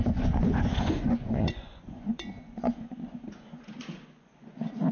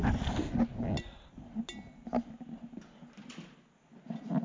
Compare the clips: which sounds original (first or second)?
second